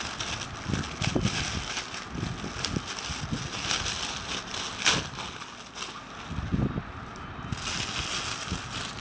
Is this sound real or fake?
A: real